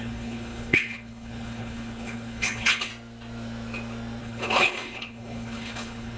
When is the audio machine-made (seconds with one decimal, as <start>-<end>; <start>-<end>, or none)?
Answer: 0.0-2.9; 4.2-6.2